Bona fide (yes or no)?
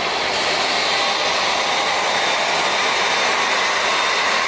yes